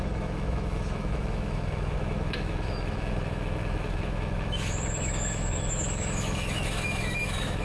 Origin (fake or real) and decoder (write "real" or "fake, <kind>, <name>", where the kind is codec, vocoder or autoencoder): fake, autoencoder, DAC-VAE